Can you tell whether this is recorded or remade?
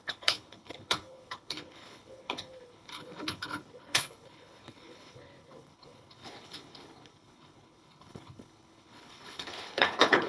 remade